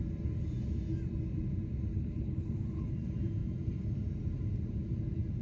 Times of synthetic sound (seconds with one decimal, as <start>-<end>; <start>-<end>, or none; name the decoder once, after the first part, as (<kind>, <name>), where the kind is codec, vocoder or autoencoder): 1.9-2.8 (codec, HILCodec)